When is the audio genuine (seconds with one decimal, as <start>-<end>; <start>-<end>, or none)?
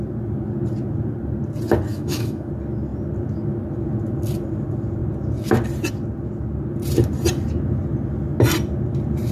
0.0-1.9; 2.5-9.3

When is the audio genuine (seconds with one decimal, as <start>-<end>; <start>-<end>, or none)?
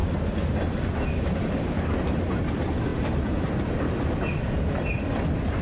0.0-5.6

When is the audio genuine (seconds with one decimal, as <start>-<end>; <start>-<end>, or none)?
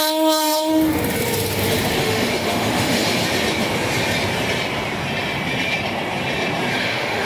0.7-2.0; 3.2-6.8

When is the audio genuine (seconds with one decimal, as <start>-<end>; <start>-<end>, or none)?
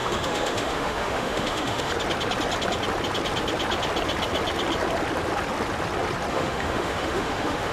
1.9-6.3